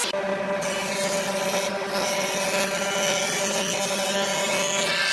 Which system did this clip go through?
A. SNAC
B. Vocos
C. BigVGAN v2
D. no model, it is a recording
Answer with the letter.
D